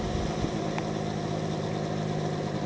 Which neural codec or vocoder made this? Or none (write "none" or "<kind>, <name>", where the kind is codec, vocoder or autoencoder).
none